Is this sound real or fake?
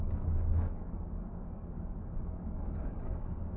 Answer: fake